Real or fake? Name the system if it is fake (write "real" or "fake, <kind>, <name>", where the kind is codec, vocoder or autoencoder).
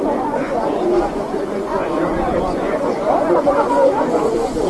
fake, vocoder, Vocos